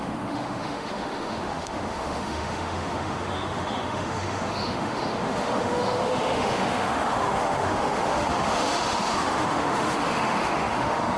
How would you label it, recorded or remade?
remade